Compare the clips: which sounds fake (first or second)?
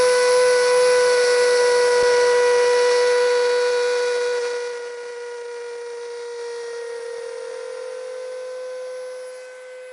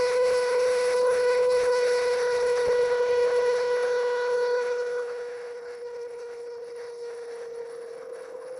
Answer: second